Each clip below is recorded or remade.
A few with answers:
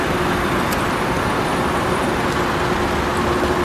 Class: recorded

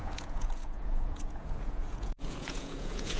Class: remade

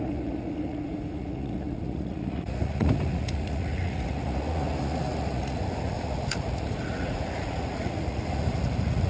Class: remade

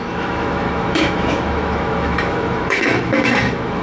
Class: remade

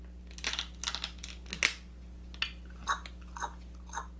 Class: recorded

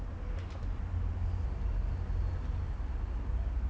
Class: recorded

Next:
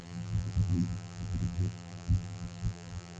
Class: remade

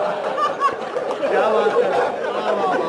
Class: recorded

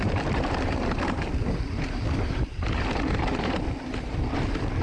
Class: remade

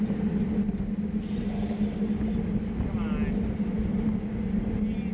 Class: recorded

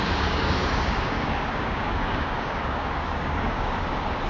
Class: remade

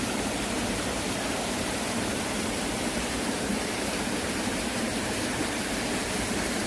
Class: remade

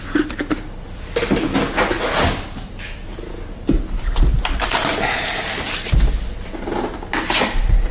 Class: recorded